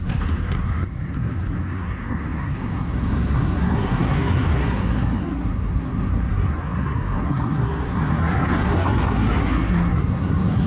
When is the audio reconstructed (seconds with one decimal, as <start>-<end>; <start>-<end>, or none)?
0.0-10.7